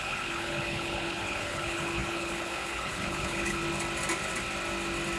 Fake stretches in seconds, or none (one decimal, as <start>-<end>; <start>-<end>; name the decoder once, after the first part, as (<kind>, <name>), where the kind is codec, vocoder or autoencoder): 0.0-3.6 (codec, HILCodec)

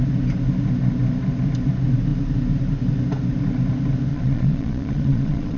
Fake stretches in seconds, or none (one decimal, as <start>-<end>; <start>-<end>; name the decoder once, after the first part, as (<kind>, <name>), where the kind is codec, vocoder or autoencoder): 4.1-5.6 (vocoder, Vocos)

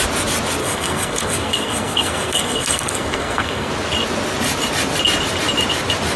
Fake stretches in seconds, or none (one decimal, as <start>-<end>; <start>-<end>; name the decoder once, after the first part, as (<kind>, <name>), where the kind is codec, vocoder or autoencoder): 0.6-3.7 (codec, SNAC)

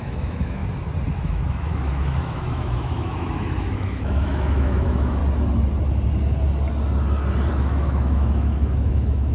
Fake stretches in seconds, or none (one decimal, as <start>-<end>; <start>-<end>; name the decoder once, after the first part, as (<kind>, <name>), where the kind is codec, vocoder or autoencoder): 0.0-0.6 (autoencoder, DAC-VAE); 1.1-5.2; 7.5-9.3

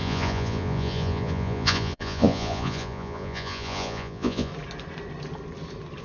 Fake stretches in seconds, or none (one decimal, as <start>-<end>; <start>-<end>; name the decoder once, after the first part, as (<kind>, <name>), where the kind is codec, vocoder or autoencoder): 0.0-4.5 (vocoder, Vocos)

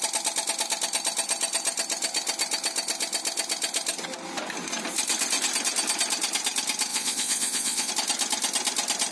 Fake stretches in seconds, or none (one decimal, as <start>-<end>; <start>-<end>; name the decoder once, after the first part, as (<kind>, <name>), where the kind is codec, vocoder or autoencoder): 6.9-7.9 (vocoder, Vocos)

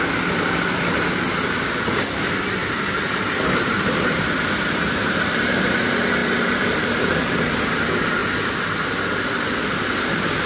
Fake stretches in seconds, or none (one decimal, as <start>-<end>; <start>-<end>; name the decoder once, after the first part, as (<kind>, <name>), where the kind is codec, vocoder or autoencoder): 2.6-5.5 (vocoder, BigVGAN v2); 6.2-7.6